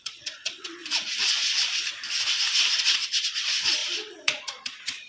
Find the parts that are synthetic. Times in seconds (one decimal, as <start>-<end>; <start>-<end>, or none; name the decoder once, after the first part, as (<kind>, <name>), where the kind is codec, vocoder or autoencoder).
0.0-0.8 (vocoder, Vocos); 2.7-5.1